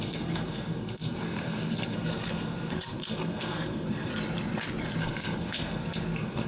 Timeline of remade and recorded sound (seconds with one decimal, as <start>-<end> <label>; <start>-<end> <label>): 0.0-4.1 remade; 4.1-5.0 recorded; 5.0-6.5 remade